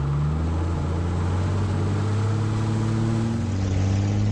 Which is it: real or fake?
real